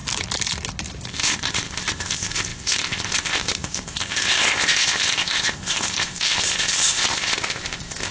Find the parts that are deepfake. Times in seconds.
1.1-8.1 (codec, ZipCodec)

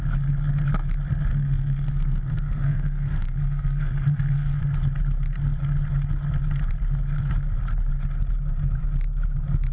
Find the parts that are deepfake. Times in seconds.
1.3-4.6 (codec, SNAC)